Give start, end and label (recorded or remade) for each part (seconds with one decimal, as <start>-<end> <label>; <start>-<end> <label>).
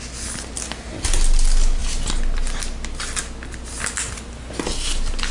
0.0-5.3 recorded